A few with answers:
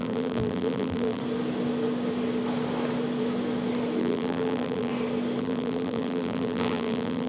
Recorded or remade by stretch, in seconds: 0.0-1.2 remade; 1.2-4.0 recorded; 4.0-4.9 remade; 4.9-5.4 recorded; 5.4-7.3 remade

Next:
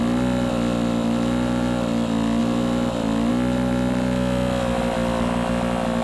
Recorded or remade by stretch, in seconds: 0.0-6.0 recorded

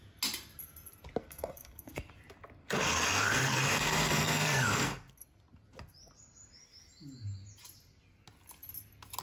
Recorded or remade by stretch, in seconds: 0.0-1.2 recorded; 1.2-2.1 remade; 2.1-2.6 recorded; 2.6-5.1 remade; 5.1-9.2 recorded

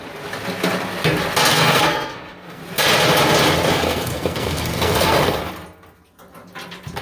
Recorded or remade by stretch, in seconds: 0.0-1.5 recorded; 1.5-2.6 remade; 2.6-3.7 recorded; 3.7-5.4 remade; 5.4-7.0 recorded

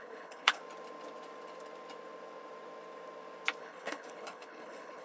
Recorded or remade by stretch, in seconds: 0.0-0.6 remade; 0.6-3.6 recorded; 3.6-5.0 remade

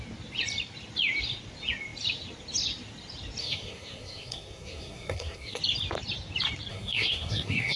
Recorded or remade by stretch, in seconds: 0.0-3.4 recorded; 3.4-5.6 remade; 5.6-6.7 recorded; 6.7-7.8 remade

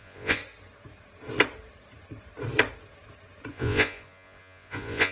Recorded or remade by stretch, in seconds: 0.0-0.4 remade; 0.4-3.5 recorded; 3.5-5.1 remade